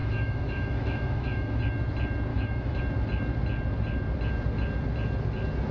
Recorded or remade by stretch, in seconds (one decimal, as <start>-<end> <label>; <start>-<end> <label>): 0.0-1.6 remade; 1.6-2.3 recorded; 2.3-2.8 remade; 2.8-5.7 recorded

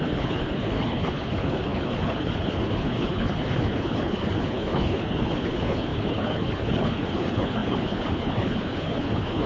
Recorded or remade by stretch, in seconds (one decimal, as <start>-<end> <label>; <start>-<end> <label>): 0.0-9.5 remade

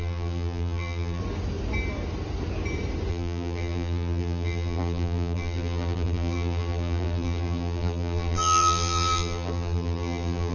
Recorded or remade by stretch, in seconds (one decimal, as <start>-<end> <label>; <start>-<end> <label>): 0.0-1.2 remade; 1.2-3.1 recorded; 3.1-10.5 remade